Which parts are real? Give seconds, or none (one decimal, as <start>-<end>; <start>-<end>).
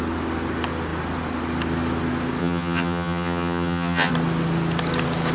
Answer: 0.0-2.4; 4.1-5.3